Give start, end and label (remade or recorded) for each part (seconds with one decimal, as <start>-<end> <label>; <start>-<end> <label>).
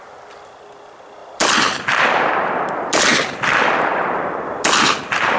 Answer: 0.0-5.4 recorded